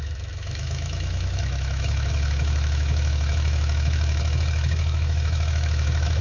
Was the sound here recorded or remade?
remade